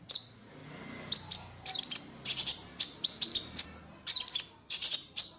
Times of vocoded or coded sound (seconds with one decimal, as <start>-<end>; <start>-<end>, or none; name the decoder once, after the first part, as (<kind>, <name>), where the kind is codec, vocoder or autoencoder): 0.0-0.6 (vocoder, BigVGAN v2); 1.8-5.4